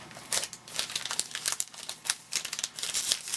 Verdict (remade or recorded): recorded